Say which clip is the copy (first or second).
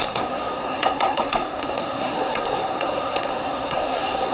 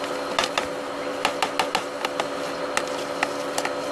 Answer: first